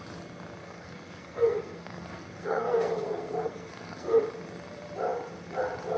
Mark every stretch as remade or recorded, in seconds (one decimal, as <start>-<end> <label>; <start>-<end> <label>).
0.0-0.6 recorded; 0.6-4.2 remade; 4.2-6.0 recorded

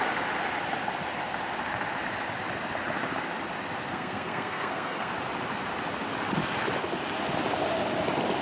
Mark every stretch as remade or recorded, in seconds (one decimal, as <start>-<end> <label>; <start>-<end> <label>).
0.0-3.9 recorded; 3.9-5.1 remade; 5.1-8.4 recorded

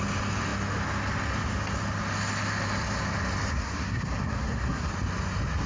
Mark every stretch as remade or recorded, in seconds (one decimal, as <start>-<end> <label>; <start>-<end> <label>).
0.0-3.5 recorded; 3.5-4.9 remade; 4.9-5.7 recorded